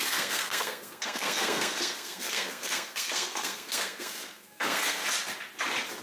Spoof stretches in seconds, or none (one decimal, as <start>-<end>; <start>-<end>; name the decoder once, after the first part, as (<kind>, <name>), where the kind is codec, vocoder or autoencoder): 0.0-5.0 (codec, SNAC)